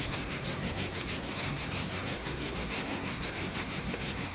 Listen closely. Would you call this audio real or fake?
fake